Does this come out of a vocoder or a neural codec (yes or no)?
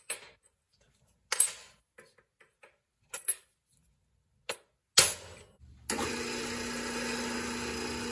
no